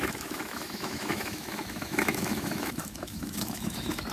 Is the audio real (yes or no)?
no